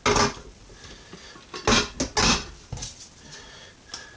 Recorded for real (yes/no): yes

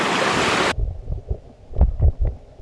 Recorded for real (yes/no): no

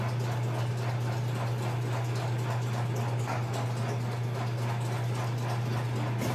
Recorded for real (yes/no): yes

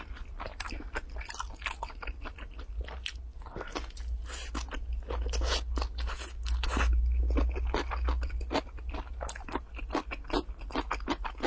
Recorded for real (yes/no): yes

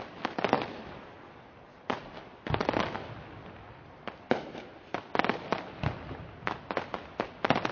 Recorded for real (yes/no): yes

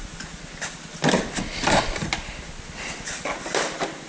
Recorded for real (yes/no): yes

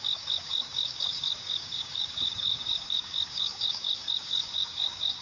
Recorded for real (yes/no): no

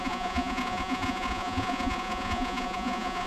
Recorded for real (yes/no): no